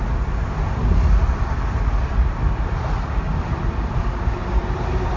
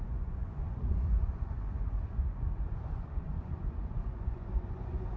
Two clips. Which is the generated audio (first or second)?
second